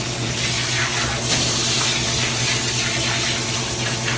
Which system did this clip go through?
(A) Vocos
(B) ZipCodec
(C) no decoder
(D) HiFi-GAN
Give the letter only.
C